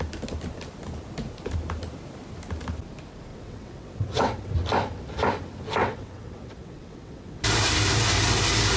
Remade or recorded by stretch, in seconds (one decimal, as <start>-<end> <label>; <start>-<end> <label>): 0.0-3.3 recorded; 3.3-4.5 remade; 4.5-5.8 recorded; 5.8-7.4 remade; 7.4-8.8 recorded